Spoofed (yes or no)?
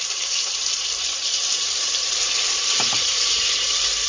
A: yes